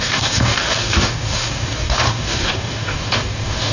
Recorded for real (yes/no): no